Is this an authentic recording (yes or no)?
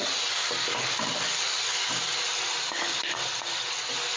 yes